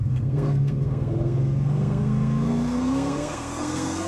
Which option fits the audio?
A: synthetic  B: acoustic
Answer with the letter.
A